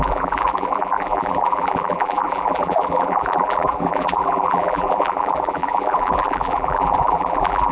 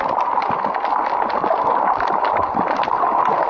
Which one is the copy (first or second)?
first